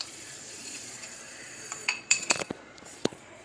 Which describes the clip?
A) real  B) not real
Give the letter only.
B